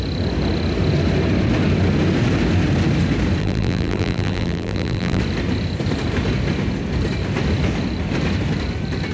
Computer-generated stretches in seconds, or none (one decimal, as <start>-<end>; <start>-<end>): 3.4-5.2